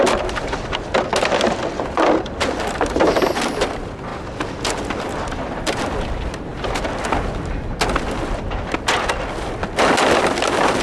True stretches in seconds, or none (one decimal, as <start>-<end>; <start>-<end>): 0.0-4.1; 5.8-10.8